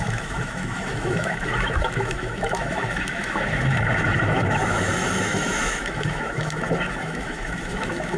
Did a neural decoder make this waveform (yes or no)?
yes